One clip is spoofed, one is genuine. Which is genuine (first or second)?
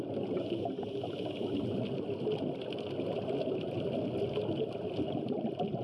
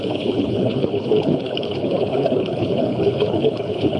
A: first